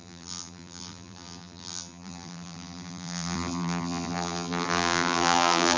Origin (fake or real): fake